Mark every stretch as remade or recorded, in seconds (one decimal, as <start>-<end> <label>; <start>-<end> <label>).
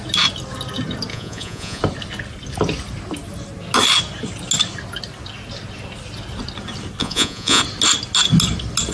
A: 0.0-1.1 recorded; 1.1-1.8 remade; 1.8-7.0 recorded; 7.0-7.6 remade; 7.6-8.9 recorded